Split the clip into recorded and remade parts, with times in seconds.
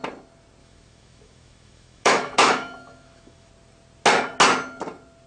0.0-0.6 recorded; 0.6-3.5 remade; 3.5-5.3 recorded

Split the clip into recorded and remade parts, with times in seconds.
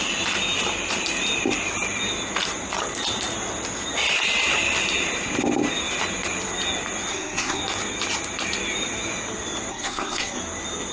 0.0-7.1 recorded; 7.1-7.6 remade; 7.6-9.7 recorded; 9.7-10.4 remade; 10.4-10.9 recorded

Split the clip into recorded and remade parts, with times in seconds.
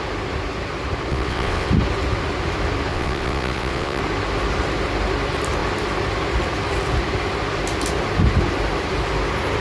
0.0-1.1 recorded; 1.1-1.7 remade; 1.7-2.9 recorded; 2.9-4.0 remade; 4.0-9.6 recorded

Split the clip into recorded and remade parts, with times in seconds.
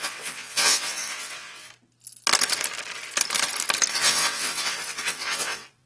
0.0-1.7 remade; 1.7-3.9 recorded; 3.9-5.9 remade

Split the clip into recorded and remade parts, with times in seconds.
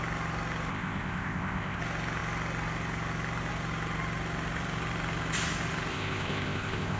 0.0-0.7 recorded; 0.7-1.8 remade; 1.8-5.9 recorded; 5.9-7.0 remade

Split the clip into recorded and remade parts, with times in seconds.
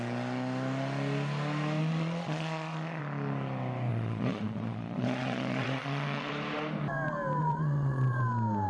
0.0-1.8 recorded; 1.8-3.0 remade; 3.0-3.9 recorded; 3.9-6.3 remade; 6.3-7.4 recorded; 7.4-8.2 remade; 8.2-8.7 recorded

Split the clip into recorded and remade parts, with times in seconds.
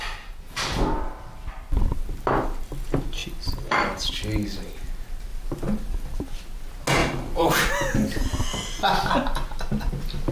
0.0-3.2 recorded; 3.2-4.1 remade; 4.1-5.3 recorded; 5.3-6.4 remade; 6.4-7.0 recorded; 7.0-7.7 remade; 7.7-10.3 recorded